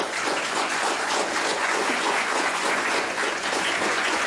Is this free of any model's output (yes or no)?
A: no